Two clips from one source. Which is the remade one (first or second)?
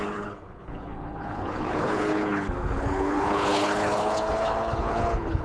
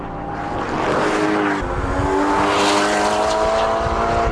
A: first